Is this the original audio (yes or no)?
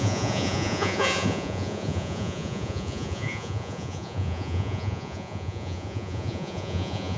no